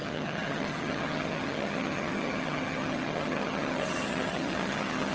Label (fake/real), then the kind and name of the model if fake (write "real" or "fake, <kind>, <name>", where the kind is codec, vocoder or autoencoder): fake, vocoder, HiFi-GAN